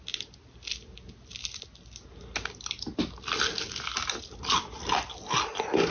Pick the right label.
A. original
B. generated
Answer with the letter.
A